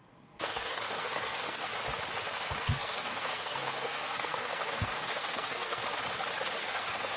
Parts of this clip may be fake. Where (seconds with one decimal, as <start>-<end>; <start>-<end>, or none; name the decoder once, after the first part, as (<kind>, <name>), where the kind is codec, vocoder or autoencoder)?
0.0-1.7 (codec, SNAC); 2.6-5.8; 6.6-7.2